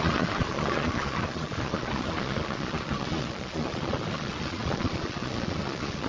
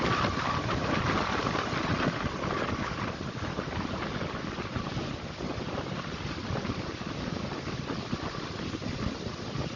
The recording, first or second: second